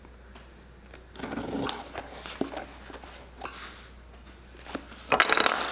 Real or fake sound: real